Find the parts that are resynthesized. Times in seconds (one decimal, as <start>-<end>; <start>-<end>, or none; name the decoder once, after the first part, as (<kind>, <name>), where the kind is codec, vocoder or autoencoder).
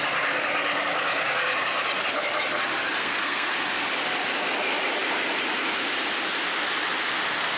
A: 3.0-3.5 (codec, SNAC)